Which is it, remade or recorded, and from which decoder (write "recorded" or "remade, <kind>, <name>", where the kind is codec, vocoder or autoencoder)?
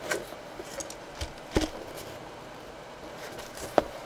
recorded